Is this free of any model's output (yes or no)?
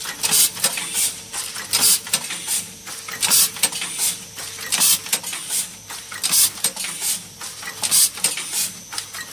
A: yes